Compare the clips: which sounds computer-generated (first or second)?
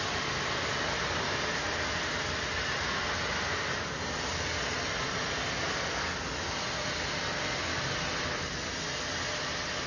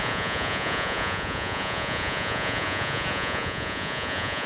second